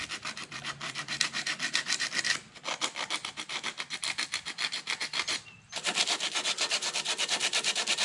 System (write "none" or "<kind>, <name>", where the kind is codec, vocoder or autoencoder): vocoder, BigVGAN v2